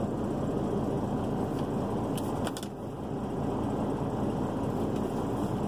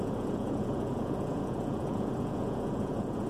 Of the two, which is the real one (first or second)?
first